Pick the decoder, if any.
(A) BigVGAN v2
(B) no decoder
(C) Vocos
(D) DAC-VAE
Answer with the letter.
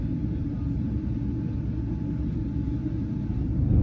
B